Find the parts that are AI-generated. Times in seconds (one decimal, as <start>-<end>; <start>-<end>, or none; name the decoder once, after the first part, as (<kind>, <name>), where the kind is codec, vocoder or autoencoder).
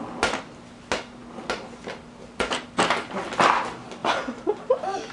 none